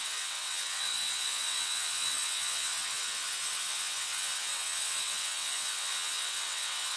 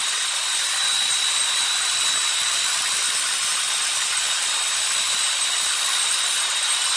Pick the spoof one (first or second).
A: first